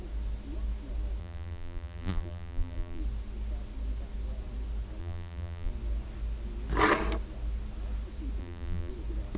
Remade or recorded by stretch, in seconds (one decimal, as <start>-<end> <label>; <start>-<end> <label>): 0.0-1.2 recorded; 1.2-3.0 remade; 3.0-5.0 recorded; 5.0-5.7 remade; 5.7-8.4 recorded; 8.4-8.9 remade; 8.9-9.4 recorded